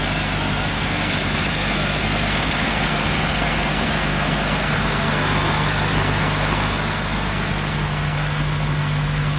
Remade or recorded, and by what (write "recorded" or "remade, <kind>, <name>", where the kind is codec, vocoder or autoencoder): remade, codec, SNAC